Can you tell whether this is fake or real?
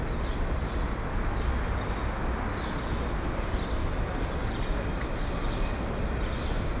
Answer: real